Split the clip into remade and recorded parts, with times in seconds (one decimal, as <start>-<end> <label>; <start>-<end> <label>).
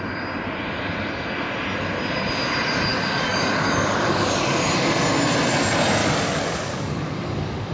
0.0-2.9 recorded; 2.9-4.6 remade; 4.6-6.0 recorded; 6.0-7.7 remade